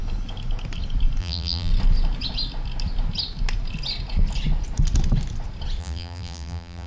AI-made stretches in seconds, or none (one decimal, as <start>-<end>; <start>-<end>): 1.2-1.7; 5.8-6.9

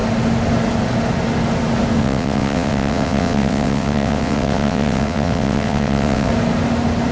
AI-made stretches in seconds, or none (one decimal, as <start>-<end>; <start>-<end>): 2.0-6.3

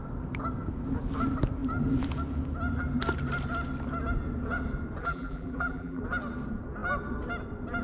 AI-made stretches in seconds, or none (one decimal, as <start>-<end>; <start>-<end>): 5.0-6.0